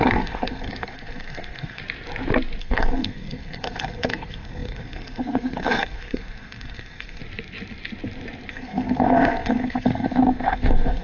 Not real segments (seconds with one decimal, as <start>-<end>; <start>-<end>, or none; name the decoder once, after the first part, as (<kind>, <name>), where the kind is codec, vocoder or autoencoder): 0.0-1.8 (codec, SNAC); 2.6-7.2; 8.5-11.0